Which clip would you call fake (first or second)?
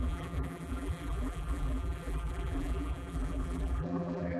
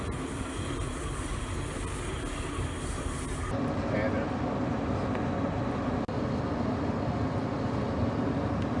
first